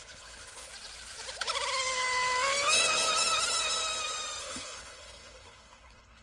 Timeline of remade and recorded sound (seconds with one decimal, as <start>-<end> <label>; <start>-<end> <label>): 0.0-0.7 remade; 0.7-4.4 recorded; 4.4-6.2 remade